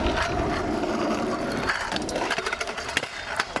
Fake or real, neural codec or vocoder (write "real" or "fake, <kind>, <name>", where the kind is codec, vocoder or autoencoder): real